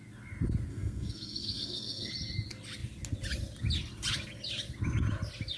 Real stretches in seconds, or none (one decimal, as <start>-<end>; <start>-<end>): 0.0-0.7; 2.1-5.6

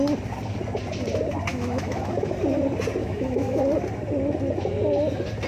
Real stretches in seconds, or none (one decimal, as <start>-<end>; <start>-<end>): 0.0-1.5; 2.3-3.0; 3.6-5.5

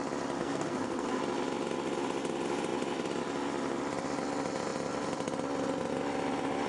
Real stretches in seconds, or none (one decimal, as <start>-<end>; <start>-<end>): 0.0-0.4; 1.2-6.7

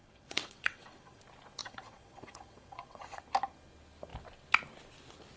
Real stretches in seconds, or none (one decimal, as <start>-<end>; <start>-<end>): 1.2-1.6; 3.2-5.4